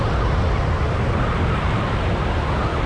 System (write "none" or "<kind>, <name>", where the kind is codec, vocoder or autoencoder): none